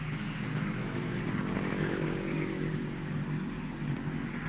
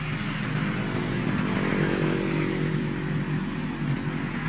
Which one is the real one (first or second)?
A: second